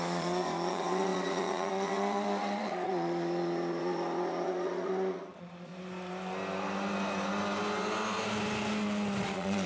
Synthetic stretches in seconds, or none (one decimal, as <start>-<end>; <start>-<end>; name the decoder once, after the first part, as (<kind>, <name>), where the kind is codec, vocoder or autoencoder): 0.0-5.7 (vocoder, Vocos); 9.2-9.7